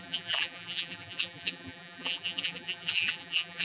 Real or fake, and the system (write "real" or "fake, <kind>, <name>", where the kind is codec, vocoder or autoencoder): fake, vocoder, BigVGAN v2